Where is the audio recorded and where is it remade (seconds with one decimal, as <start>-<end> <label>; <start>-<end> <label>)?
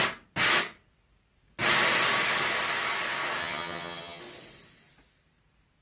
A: 0.0-3.4 recorded; 3.4-4.2 remade; 4.2-5.8 recorded